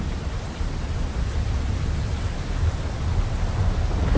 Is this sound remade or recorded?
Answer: recorded